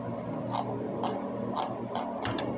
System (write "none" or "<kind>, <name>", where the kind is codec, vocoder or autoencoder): none